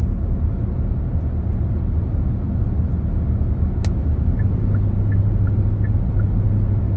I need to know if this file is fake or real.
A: real